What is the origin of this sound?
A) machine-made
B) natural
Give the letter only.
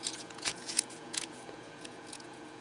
A